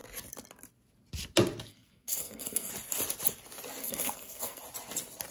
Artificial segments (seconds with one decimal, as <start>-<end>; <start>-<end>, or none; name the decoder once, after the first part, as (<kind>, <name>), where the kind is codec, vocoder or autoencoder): 1.7-2.7 (codec, SNAC); 3.8-4.6